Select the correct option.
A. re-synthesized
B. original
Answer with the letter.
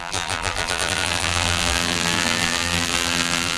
A